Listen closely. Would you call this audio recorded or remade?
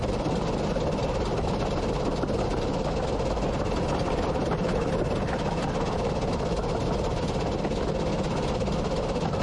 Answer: recorded